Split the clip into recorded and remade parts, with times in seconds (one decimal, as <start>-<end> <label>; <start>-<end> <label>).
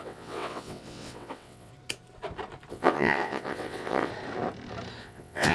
0.0-1.7 remade; 1.7-2.7 recorded; 2.7-4.1 remade; 4.1-5.0 recorded; 5.0-5.5 remade